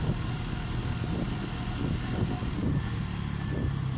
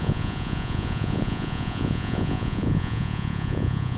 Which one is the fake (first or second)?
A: second